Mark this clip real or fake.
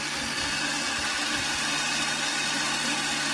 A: real